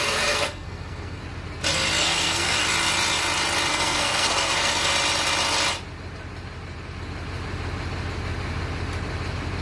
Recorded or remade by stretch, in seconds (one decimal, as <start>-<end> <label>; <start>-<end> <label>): 0.0-1.2 remade; 1.2-2.0 recorded; 2.0-2.6 remade; 2.6-3.7 recorded; 3.7-4.9 remade; 4.9-9.6 recorded